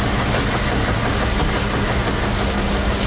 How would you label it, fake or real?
real